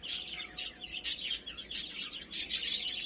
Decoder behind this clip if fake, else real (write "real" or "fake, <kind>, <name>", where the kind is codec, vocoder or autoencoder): real